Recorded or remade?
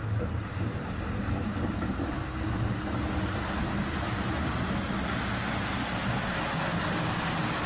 recorded